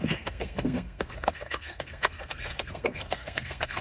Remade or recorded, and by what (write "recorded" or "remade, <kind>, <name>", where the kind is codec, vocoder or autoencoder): remade, codec, SNAC